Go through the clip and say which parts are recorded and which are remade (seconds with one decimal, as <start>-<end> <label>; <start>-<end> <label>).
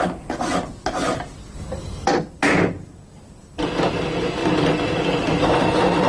0.0-4.4 recorded; 4.4-5.2 remade; 5.2-6.1 recorded